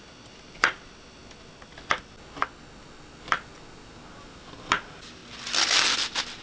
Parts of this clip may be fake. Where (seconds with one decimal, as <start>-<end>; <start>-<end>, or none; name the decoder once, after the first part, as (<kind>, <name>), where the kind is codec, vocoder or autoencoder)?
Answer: 0.0-1.2 (vocoder, BigVGAN v2); 4.2-5.2